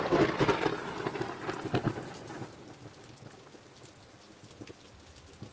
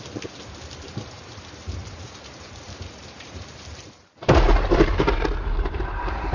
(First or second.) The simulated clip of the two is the second